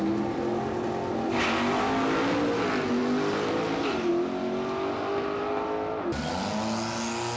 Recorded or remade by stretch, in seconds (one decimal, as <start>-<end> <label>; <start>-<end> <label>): 0.0-7.4 recorded